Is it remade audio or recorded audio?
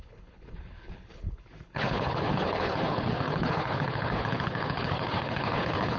remade